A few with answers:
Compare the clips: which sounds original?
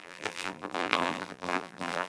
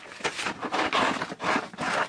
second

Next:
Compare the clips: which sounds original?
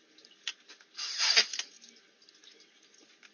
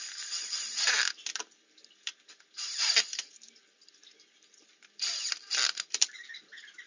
first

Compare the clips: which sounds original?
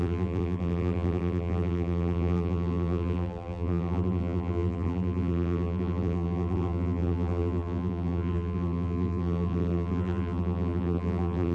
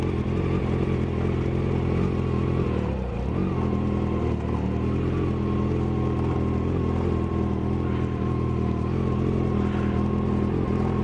second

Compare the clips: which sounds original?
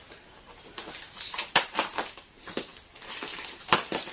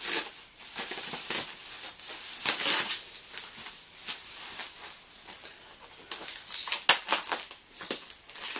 second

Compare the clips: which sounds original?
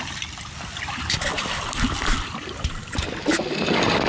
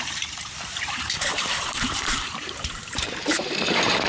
first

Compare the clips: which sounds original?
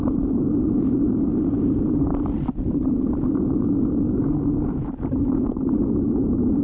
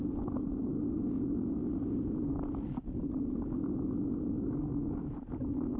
second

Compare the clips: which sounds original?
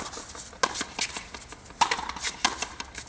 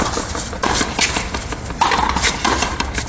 first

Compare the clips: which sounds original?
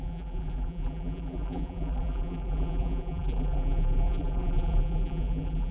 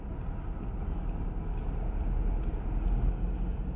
second